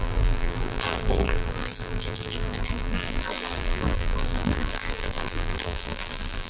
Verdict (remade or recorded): remade